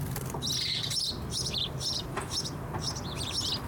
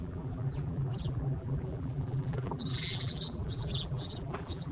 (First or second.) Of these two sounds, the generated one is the second